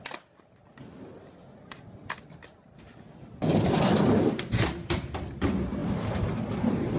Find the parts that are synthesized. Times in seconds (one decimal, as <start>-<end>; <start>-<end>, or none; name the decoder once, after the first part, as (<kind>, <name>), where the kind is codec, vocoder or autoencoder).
none